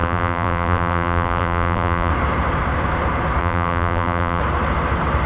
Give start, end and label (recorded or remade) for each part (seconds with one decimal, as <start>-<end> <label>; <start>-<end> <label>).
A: 0.0-2.1 remade; 2.1-3.4 recorded; 3.4-4.4 remade; 4.4-5.3 recorded